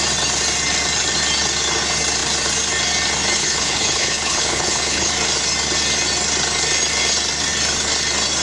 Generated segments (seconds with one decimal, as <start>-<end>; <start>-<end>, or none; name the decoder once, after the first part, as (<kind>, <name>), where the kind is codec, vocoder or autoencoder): 3.4-5.1 (codec, HILCodec)